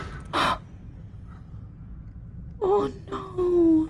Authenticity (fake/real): real